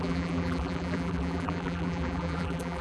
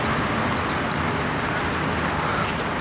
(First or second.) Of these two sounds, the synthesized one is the first